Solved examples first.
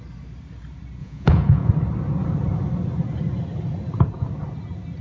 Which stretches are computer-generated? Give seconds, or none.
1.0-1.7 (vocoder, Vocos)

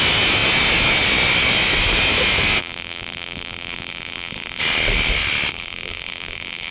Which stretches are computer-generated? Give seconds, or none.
2.6-4.6 (vocoder, BigVGAN v2); 5.5-6.7

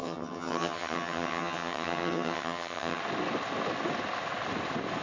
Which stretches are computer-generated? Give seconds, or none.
0.0-3.0 (vocoder, HiFi-GAN)

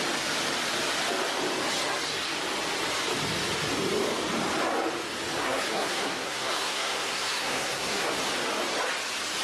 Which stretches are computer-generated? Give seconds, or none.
5.4-8.2 (codec, SNAC)

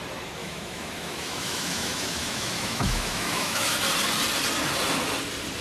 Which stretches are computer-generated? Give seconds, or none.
0.4-3.8 (autoencoder, DAC-VAE)

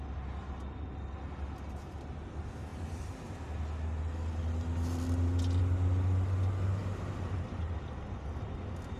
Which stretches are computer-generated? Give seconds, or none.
6.8-7.7 (vocoder, BigVGAN v2)